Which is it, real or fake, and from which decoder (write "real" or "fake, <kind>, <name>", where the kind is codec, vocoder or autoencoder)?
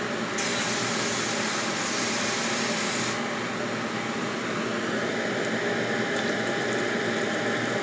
real